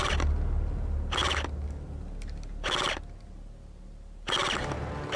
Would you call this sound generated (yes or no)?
no